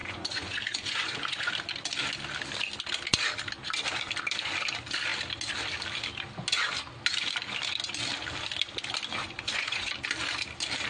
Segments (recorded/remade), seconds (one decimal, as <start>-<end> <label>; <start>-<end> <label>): 0.0-1.5 remade; 1.5-9.1 recorded; 9.1-9.9 remade; 9.9-10.9 recorded